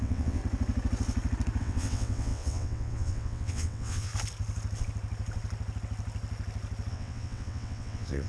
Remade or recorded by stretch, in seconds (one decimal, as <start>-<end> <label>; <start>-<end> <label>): 0.0-0.4 remade; 0.4-1.6 recorded; 1.6-4.1 remade; 4.1-6.9 recorded; 6.9-8.3 remade